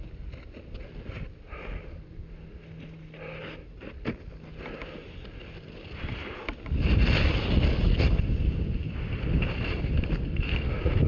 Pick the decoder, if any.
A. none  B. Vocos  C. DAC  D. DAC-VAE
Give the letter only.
A